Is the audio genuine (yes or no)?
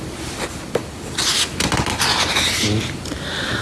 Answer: yes